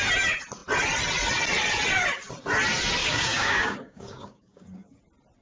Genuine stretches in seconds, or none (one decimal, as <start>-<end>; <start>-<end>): 0.0-3.0; 5.0-5.4